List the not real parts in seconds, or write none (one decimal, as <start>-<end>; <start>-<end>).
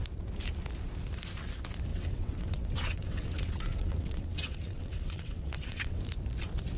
1.9-6.0